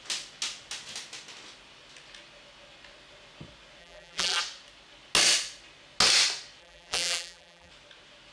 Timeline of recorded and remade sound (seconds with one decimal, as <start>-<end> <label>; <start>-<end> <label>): 0.0-3.8 recorded; 3.8-4.4 remade; 4.4-6.6 recorded; 6.6-7.7 remade; 7.7-8.3 recorded